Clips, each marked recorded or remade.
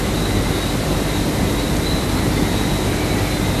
recorded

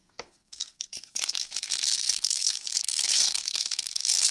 remade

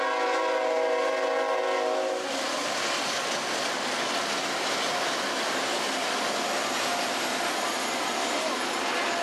recorded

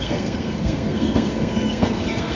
remade